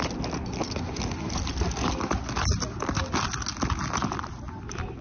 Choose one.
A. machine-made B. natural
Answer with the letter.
B